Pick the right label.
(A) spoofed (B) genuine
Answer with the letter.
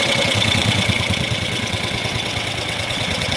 A